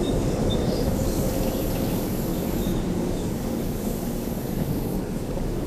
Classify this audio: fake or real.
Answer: fake